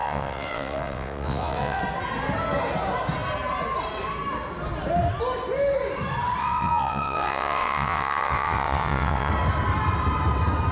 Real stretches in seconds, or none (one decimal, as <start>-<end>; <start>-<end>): 1.8-6.4; 9.3-10.7